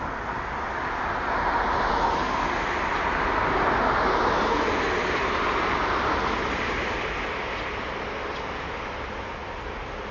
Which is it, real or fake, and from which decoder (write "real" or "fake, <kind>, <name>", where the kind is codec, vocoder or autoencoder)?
real